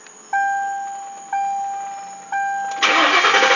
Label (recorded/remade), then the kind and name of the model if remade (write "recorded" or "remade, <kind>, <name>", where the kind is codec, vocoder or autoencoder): recorded